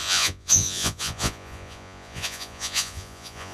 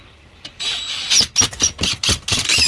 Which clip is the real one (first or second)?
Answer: second